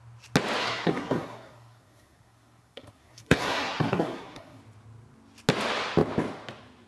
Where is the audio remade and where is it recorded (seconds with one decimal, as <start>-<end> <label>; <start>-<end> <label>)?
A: 0.0-0.6 recorded; 0.6-4.6 remade; 4.6-6.9 recorded